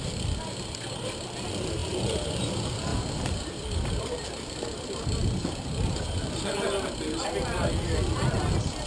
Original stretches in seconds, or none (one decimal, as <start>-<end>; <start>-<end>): 0.0-1.8; 2.4-2.9; 4.9-8.9

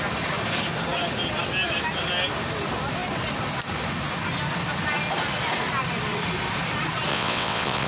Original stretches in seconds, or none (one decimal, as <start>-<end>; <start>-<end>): 0.0-7.1

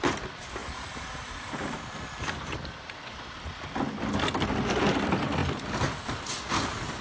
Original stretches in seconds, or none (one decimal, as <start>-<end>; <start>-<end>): 0.0-7.0

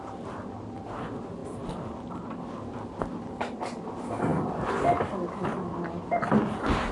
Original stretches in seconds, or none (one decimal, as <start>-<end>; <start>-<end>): 0.0-6.9

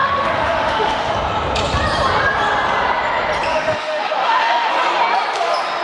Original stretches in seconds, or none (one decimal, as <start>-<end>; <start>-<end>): 1.1-3.5; 4.7-5.8